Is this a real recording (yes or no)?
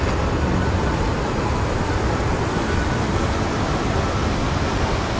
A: yes